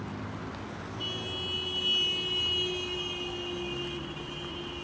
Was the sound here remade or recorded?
recorded